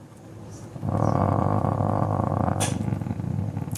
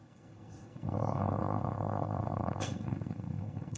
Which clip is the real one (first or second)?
first